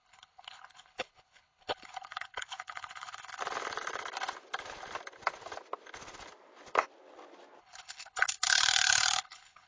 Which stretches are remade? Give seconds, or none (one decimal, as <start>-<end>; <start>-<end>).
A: 0.0-3.4; 7.6-9.7